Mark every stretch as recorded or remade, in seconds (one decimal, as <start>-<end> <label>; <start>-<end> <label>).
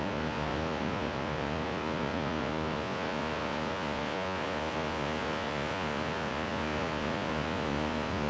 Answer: 0.0-8.3 remade